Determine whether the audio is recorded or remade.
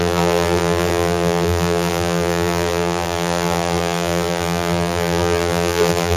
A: remade